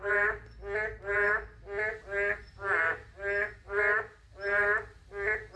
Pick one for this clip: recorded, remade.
recorded